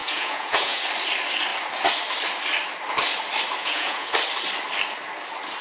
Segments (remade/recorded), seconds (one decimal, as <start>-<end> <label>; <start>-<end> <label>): 0.0-0.8 remade; 0.8-3.6 recorded; 3.6-4.1 remade; 4.1-5.6 recorded